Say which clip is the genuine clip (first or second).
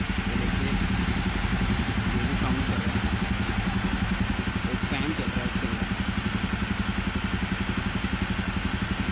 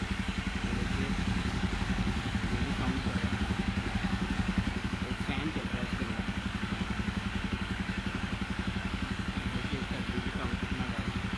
first